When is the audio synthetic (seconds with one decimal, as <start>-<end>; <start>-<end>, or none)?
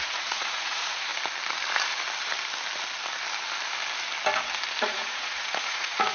0.0-1.1; 4.8-6.1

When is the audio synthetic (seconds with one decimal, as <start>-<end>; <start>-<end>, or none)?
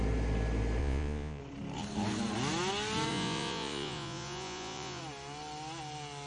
0.8-1.4; 3.1-5.0